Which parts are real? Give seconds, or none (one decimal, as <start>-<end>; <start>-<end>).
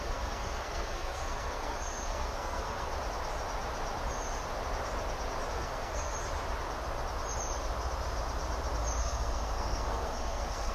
2.9-5.5; 6.1-9.0